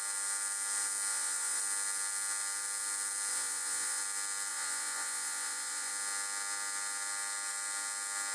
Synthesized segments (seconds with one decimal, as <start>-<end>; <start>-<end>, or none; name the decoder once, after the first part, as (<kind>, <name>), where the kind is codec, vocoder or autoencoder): 1.1-1.6 (vocoder, Vocos); 3.3-4.0; 4.5-5.9